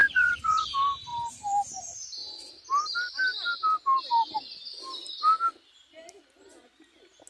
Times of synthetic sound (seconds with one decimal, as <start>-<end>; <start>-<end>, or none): 0.0-0.7